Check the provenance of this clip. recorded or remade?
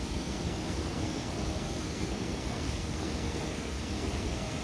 remade